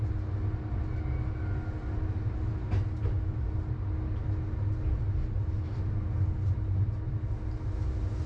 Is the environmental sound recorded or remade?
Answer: recorded